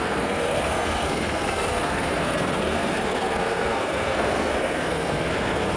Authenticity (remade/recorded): remade